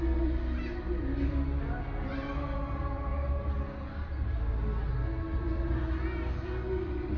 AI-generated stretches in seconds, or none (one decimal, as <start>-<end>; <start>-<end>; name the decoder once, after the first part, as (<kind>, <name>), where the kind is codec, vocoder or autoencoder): none